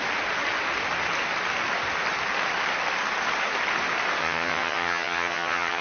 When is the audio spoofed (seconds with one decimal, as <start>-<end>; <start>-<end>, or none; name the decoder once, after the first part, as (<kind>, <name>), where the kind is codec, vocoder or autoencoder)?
4.2-5.8 (vocoder, HiFi-GAN)